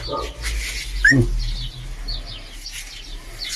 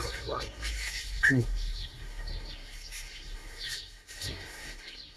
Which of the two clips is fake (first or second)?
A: second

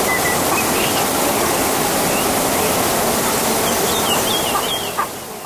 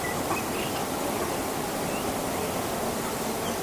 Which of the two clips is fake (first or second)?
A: second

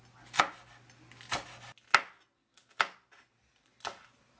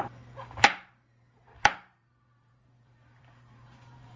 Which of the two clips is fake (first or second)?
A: second